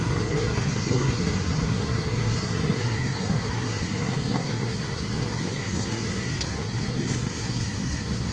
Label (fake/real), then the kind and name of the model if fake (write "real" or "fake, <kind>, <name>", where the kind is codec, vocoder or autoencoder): fake, codec, SNAC